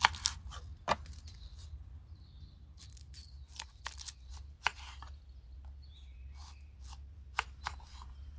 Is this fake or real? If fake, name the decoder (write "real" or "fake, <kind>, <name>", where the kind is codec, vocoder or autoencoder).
real